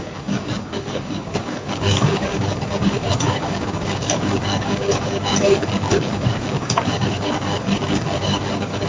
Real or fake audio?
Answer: fake